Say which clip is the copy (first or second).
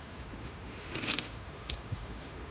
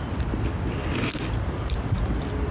first